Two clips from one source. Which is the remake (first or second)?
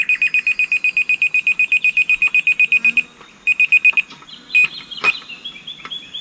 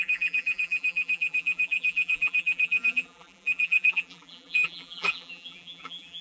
second